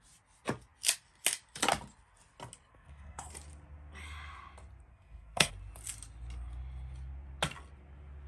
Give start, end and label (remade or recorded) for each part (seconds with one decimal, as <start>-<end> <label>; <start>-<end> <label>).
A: 0.0-2.7 recorded; 2.7-3.3 remade; 3.3-4.9 recorded; 4.9-5.5 remade; 5.5-8.3 recorded